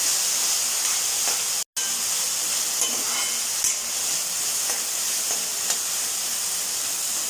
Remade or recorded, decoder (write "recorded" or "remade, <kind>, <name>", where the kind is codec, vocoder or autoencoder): recorded